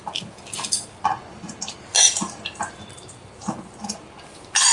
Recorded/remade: recorded